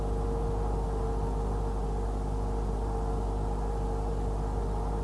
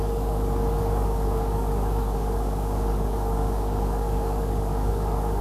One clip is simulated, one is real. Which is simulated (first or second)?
second